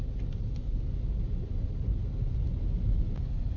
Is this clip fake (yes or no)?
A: no